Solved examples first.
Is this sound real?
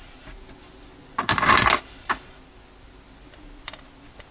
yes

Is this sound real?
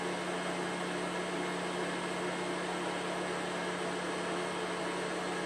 yes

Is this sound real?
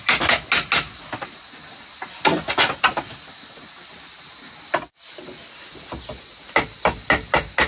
yes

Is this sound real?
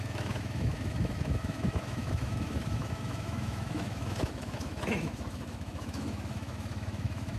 no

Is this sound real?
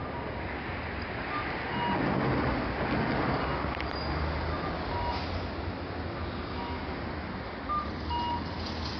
yes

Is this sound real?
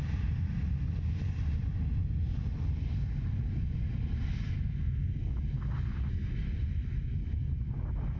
yes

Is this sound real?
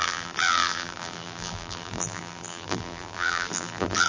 no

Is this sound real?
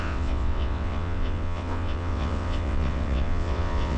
no